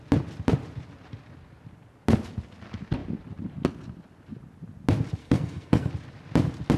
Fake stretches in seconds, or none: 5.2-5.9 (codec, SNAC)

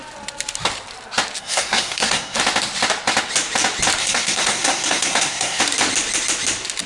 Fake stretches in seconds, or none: 1.4-2.4 (codec, SNAC); 4.0-5.6

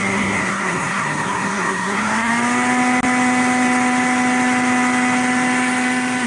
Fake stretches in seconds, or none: 0.0-2.3 (codec, SNAC)

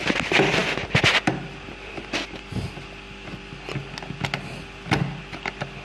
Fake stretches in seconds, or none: none

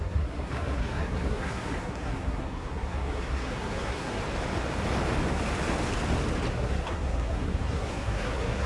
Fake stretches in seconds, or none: 0.0-4.2 (codec, SNAC); 6.5-8.7